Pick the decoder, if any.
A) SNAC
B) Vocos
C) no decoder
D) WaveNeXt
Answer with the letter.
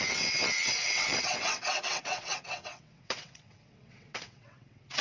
D